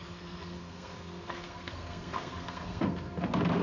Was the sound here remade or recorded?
remade